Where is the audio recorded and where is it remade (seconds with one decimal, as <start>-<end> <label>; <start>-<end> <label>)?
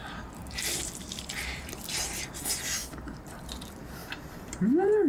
0.0-2.4 remade; 2.4-2.8 recorded; 2.8-3.4 remade; 3.4-4.0 recorded; 4.0-5.1 remade